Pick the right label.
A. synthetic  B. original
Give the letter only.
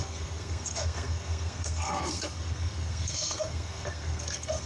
A